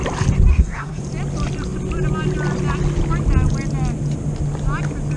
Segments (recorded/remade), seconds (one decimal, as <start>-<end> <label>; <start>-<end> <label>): 0.0-0.5 recorded; 0.5-1.0 remade; 1.0-5.2 recorded